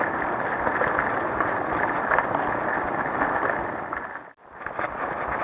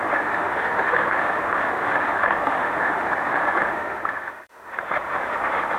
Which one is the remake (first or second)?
second